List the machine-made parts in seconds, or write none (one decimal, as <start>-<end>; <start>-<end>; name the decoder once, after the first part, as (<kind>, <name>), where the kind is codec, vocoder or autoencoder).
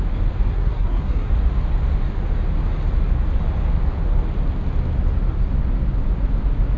0.5-1.3 (codec, SNAC)